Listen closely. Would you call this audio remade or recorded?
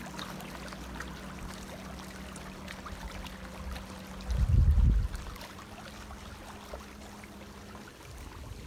recorded